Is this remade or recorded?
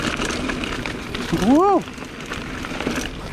recorded